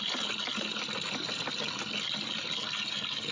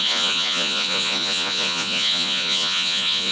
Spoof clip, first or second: second